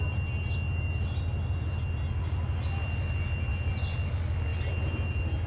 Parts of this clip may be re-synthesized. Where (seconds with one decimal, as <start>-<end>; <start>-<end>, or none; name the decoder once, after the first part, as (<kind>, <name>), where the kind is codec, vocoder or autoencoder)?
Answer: none